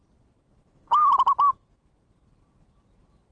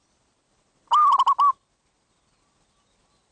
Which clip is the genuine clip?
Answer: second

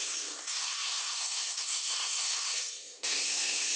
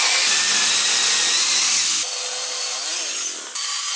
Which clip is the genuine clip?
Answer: second